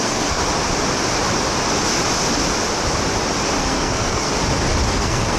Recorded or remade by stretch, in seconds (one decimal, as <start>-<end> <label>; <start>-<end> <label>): 0.0-0.4 remade; 0.4-3.6 recorded; 3.6-4.3 remade; 4.3-4.9 recorded; 4.9-5.4 remade